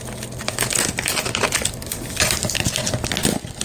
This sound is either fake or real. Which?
real